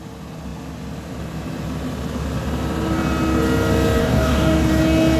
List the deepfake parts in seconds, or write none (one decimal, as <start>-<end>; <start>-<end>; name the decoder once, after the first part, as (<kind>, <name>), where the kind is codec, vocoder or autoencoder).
4.0-4.7 (codec, DAC)